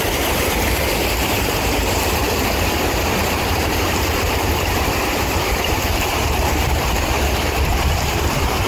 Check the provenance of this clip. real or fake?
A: fake